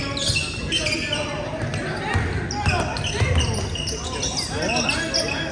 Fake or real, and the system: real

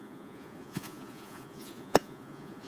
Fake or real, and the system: fake, vocoder, Vocos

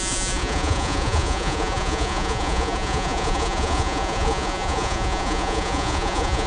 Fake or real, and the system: fake, vocoder, Vocos